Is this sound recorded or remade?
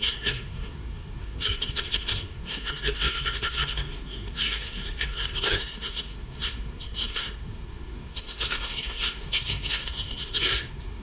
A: remade